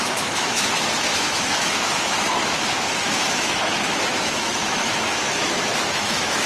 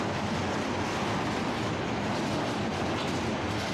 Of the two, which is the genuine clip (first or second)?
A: second